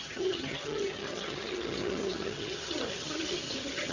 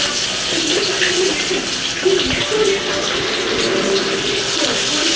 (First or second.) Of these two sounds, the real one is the second